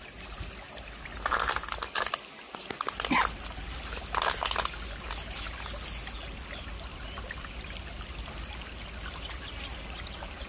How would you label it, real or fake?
real